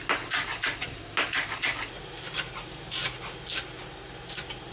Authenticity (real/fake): real